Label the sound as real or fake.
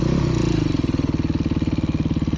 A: real